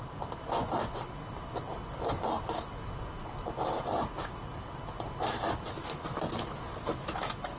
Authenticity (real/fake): real